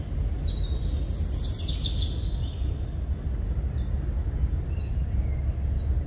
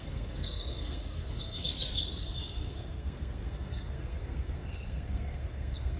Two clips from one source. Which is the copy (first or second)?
second